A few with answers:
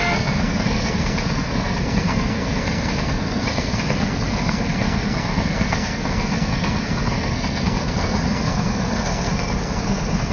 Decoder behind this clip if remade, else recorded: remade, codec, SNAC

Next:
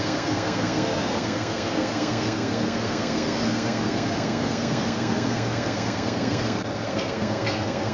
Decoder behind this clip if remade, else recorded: remade, codec, SNAC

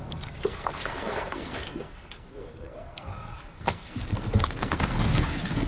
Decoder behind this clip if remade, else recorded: remade, codec, SNAC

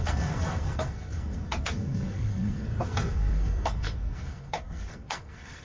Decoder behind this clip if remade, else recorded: remade, codec, SNAC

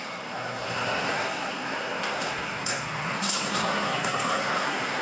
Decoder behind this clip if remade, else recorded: remade, codec, SNAC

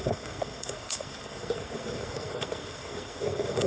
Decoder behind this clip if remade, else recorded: remade, codec, SNAC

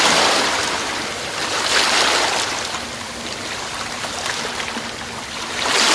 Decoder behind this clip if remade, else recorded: recorded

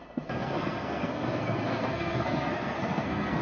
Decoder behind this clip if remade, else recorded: remade, codec, SNAC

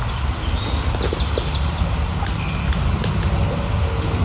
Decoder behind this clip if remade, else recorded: recorded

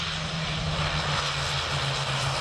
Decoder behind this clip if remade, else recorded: recorded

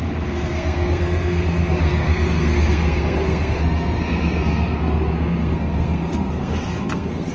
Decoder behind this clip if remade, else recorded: remade, codec, SNAC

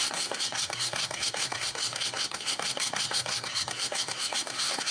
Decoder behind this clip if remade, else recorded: remade, codec, SNAC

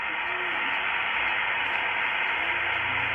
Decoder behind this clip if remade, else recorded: recorded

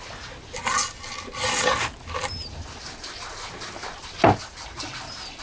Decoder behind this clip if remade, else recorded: recorded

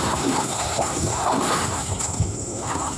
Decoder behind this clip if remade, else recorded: remade, codec, SNAC